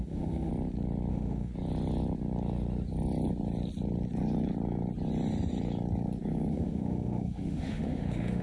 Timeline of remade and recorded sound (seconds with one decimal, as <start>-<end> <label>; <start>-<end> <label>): 0.0-0.5 remade; 0.5-1.1 recorded; 1.1-1.5 remade; 1.5-6.5 recorded; 6.5-8.4 remade